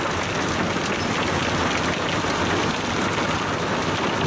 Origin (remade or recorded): recorded